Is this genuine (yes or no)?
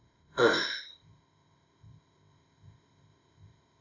no